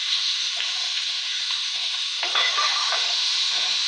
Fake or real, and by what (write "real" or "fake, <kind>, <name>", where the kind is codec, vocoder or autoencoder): fake, autoencoder, DAC-VAE